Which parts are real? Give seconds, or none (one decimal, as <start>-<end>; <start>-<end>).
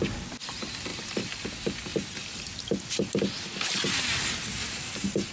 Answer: 0.0-0.9; 1.4-1.9; 3.1-5.3